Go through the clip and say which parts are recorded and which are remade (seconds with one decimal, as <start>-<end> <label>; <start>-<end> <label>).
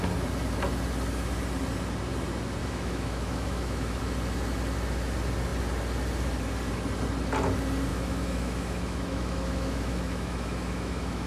0.0-2.6 recorded; 2.6-4.0 remade; 4.0-7.9 recorded; 7.9-11.3 remade